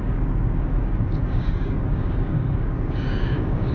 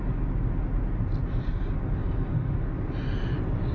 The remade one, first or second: first